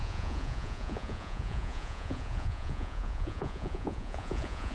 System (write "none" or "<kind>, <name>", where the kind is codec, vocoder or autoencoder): vocoder, Vocos